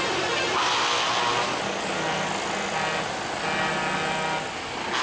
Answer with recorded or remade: recorded